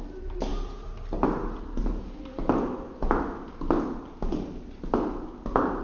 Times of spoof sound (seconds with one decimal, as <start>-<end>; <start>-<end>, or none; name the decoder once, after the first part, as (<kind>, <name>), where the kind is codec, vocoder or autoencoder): none